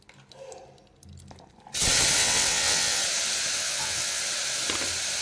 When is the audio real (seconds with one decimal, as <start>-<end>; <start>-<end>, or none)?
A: 0.0-2.2; 3.0-3.6; 4.2-5.2